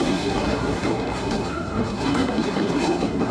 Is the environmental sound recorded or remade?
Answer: remade